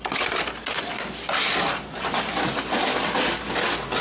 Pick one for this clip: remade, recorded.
recorded